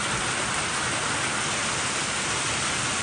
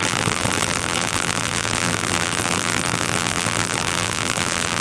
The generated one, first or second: second